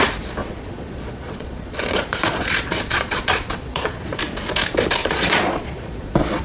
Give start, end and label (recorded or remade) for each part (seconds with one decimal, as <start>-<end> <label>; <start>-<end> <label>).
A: 0.0-0.4 recorded; 0.4-4.2 remade; 4.2-5.0 recorded; 5.0-6.4 remade

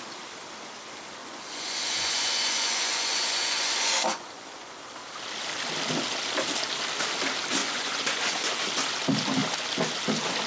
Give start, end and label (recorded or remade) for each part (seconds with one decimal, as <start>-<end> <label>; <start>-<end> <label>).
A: 0.0-1.2 recorded; 1.2-4.7 remade; 4.7-7.6 recorded; 7.6-8.5 remade; 8.5-10.5 recorded

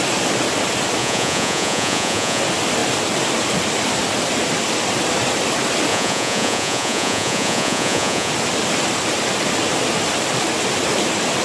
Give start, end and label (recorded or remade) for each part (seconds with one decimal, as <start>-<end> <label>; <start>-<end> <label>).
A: 0.0-1.0 recorded; 1.0-2.4 remade; 2.4-5.9 recorded; 5.9-8.3 remade; 8.3-11.4 recorded

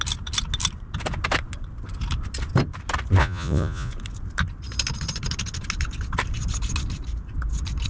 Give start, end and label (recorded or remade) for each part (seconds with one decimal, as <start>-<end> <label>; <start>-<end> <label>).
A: 0.0-3.2 recorded; 3.2-3.9 remade; 3.9-7.9 recorded

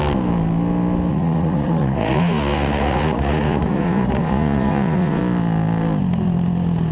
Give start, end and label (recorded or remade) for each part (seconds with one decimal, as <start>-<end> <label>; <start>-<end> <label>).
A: 0.0-1.1 recorded; 1.1-5.2 remade; 5.2-6.9 recorded

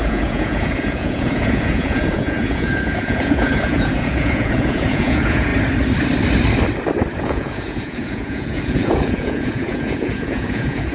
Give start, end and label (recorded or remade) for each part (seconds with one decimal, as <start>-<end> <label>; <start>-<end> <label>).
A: 0.0-5.5 remade; 5.5-7.2 recorded; 7.2-10.9 remade

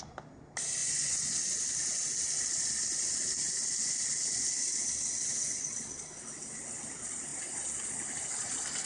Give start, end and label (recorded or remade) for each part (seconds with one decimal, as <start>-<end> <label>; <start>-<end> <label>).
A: 0.0-0.8 recorded; 0.8-1.4 remade; 1.4-8.8 recorded

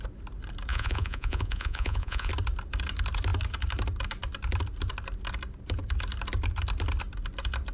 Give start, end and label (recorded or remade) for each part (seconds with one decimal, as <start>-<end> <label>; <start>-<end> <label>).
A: 0.0-0.7 recorded; 0.7-2.3 remade; 2.3-7.7 recorded